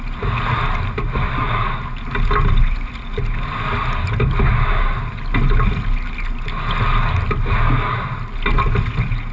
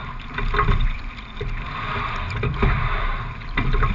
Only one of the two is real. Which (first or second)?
first